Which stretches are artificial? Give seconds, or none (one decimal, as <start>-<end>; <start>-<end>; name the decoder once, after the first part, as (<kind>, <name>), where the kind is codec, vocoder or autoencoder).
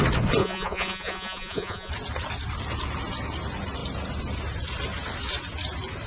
0.4-1.9 (vocoder, Vocos)